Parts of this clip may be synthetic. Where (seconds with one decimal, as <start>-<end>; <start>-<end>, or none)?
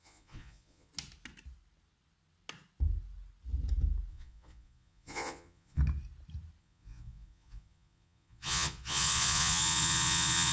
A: 0.0-0.9; 4.1-5.8; 6.6-10.5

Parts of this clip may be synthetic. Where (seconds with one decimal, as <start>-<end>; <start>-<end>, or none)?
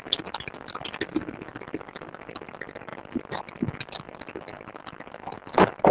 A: none